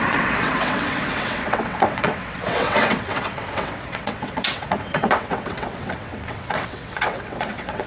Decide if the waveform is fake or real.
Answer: fake